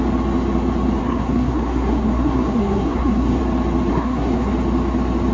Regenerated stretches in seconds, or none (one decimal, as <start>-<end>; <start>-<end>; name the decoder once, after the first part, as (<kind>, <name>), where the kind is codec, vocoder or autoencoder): 1.0-3.4 (codec, SNAC); 3.9-4.5